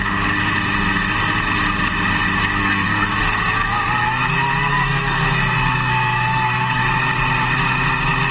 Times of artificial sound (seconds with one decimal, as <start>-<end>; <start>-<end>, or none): 2.6-3.2; 4.7-6.8